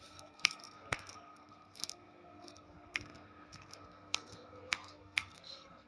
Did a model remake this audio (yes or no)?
yes